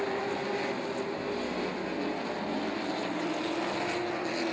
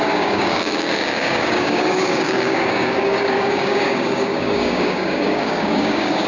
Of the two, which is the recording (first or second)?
first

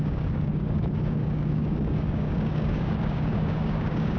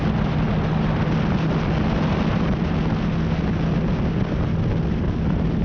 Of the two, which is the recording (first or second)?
second